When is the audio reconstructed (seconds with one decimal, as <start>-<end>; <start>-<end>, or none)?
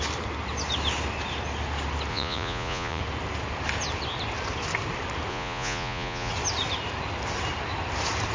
2.1-3.0; 5.3-6.3